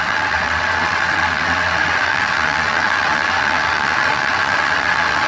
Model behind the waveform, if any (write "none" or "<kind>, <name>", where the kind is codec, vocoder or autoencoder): vocoder, WaveNeXt